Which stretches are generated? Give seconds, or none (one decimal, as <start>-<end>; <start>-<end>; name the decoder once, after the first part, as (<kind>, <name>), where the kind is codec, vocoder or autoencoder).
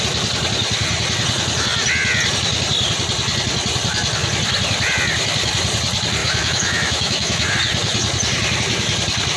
6.2-7.5 (autoencoder, DAC-VAE)